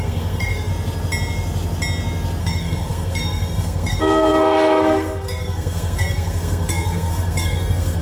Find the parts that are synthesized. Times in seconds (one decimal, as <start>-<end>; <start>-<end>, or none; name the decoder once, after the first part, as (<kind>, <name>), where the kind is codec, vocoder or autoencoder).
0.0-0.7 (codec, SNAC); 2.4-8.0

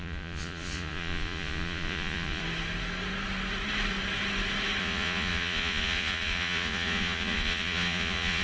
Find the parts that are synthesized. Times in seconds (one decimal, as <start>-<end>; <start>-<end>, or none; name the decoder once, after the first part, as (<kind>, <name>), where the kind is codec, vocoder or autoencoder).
0.0-2.4 (vocoder, Vocos); 4.8-8.4

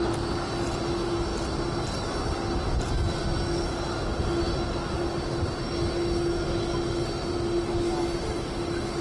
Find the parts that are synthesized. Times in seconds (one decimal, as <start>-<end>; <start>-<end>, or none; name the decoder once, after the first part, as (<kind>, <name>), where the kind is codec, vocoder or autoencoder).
none

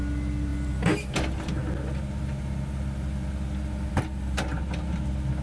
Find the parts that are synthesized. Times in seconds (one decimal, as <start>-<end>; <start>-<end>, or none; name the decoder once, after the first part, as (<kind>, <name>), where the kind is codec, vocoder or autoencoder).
none